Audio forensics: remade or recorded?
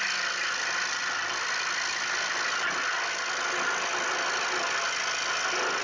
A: recorded